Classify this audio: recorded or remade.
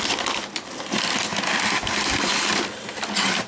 recorded